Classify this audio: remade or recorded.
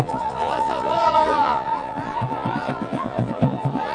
remade